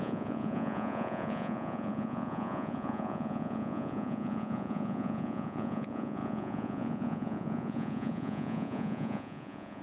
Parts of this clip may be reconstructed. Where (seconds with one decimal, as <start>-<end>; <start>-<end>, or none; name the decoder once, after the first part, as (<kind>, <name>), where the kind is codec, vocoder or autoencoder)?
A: 0.0-9.8 (vocoder, Vocos)